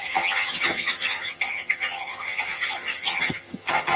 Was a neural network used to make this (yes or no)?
yes